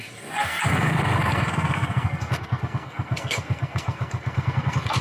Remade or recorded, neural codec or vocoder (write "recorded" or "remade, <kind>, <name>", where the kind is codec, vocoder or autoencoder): remade, codec, SNAC